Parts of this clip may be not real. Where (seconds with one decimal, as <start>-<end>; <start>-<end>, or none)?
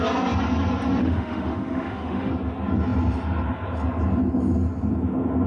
1.0-2.3